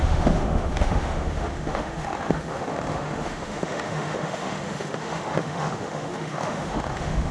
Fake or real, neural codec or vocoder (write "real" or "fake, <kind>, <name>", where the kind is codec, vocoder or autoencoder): fake, autoencoder, DAC-VAE